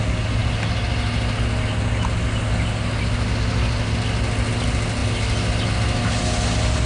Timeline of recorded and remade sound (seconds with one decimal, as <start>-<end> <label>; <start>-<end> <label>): 0.0-6.9 recorded